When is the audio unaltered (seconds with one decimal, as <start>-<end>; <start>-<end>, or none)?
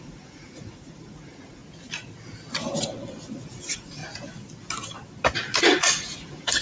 1.6-3.5; 4.0-5.6